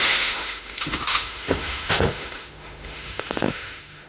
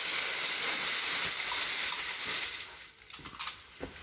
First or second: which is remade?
first